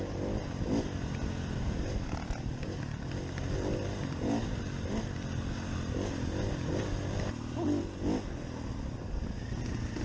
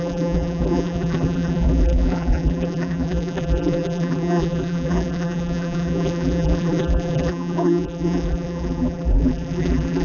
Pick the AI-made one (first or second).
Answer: second